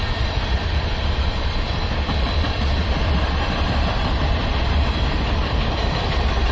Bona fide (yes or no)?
no